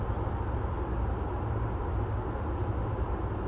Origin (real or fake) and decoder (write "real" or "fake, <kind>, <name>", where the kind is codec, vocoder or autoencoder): real